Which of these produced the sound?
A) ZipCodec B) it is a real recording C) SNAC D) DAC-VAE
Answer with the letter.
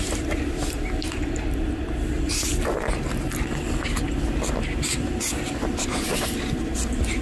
B